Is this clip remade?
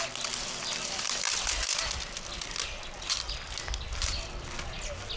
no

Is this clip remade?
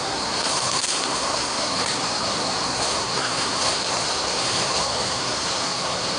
yes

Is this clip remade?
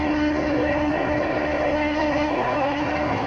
yes